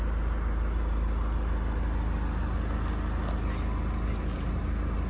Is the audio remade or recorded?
recorded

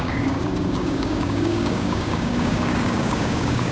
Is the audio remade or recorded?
remade